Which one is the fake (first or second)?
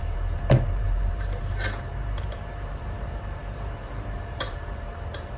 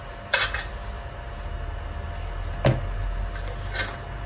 first